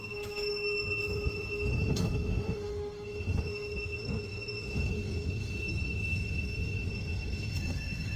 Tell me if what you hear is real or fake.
fake